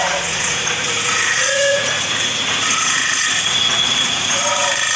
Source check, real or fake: fake